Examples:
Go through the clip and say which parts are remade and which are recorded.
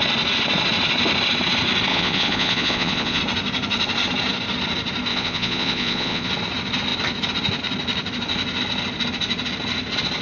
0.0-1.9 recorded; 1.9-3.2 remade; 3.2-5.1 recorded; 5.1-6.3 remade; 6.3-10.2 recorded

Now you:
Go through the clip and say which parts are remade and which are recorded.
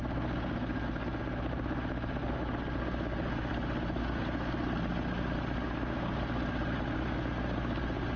0.0-8.2 recorded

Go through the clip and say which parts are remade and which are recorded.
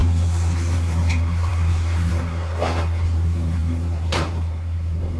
0.0-5.2 remade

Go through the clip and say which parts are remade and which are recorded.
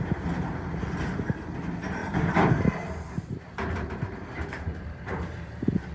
0.0-2.0 recorded; 2.0-5.5 remade; 5.5-5.9 recorded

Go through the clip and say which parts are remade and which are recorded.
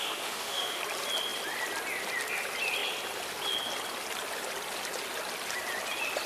0.0-0.8 remade; 0.8-6.3 recorded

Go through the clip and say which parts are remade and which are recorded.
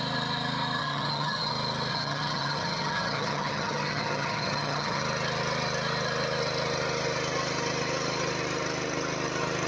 0.0-0.8 recorded; 0.8-1.5 remade; 1.5-1.9 recorded; 1.9-5.0 remade; 5.0-9.7 recorded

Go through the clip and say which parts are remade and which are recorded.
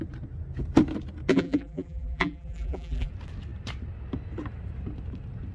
0.0-1.3 recorded; 1.3-3.1 remade; 3.1-5.5 recorded